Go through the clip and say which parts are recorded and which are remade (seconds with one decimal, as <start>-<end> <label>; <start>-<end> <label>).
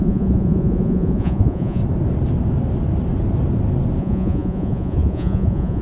0.0-1.8 remade; 1.8-4.0 recorded; 4.0-5.8 remade